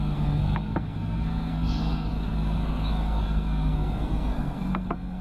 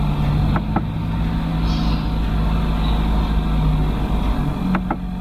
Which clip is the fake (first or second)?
first